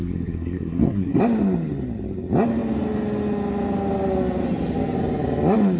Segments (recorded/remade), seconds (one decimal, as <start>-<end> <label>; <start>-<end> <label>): 0.0-1.2 remade; 1.2-5.8 recorded